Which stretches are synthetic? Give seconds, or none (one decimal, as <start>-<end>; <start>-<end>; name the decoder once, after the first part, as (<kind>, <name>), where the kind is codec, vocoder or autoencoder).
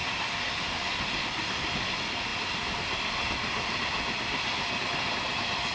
none